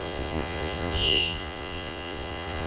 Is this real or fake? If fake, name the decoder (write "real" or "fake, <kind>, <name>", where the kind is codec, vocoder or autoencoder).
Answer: fake, vocoder, Vocos